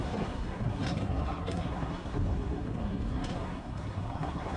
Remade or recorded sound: remade